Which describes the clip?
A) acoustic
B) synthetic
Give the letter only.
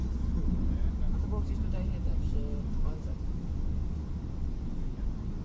A